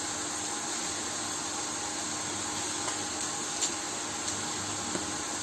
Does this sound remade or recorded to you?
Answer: recorded